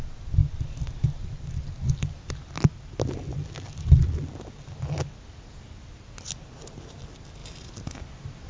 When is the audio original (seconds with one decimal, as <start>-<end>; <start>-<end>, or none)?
0.0-8.5